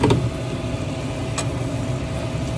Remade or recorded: recorded